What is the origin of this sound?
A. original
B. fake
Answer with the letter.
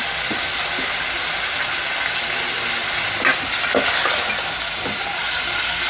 A